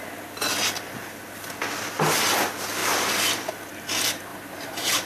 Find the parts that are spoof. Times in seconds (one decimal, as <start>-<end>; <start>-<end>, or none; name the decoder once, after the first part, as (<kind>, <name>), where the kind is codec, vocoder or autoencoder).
2.8-3.5 (vocoder, BigVGAN v2); 4.3-5.1